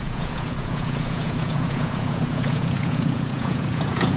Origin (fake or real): fake